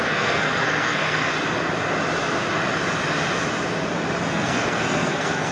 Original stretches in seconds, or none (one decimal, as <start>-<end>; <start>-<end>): 1.3-4.3